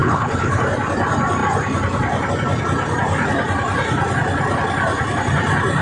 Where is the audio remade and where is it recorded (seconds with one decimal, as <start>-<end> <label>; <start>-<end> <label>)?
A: 0.0-0.6 remade; 0.6-5.8 recorded